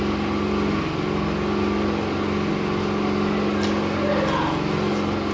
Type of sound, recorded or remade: recorded